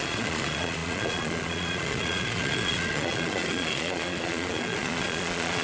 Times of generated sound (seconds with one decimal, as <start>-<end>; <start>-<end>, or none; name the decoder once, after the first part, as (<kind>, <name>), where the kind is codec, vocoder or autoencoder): 0.0-5.6 (vocoder, Vocos)